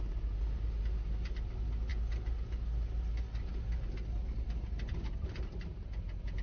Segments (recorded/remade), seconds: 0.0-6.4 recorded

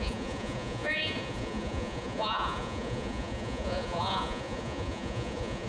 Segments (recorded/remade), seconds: 0.0-5.7 remade

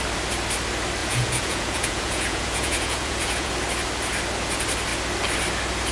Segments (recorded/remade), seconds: 0.0-1.0 recorded; 1.0-3.5 remade; 3.5-5.9 recorded

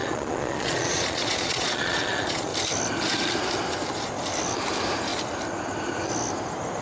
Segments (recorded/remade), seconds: 0.0-2.5 remade; 2.5-6.8 recorded

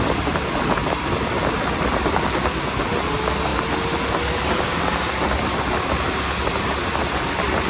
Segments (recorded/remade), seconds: 0.0-7.7 recorded

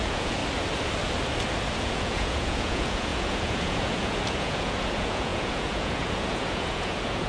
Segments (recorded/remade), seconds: 0.0-0.4 remade; 0.4-1.7 recorded; 1.7-7.3 remade

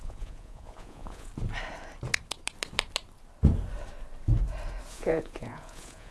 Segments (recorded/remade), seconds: 0.0-1.3 remade; 1.3-4.9 recorded; 4.9-6.1 remade

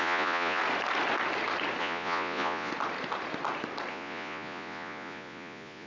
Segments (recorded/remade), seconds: 0.0-0.6 remade; 0.6-1.8 recorded; 1.8-2.7 remade; 2.7-3.9 recorded; 3.9-5.9 remade